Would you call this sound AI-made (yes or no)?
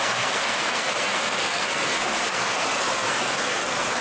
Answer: yes